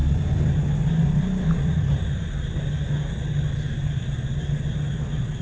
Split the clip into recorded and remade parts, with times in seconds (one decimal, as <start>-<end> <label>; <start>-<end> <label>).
0.0-5.4 recorded